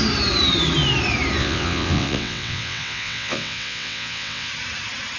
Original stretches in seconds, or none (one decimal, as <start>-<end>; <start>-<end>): 0.0-1.4; 4.5-5.2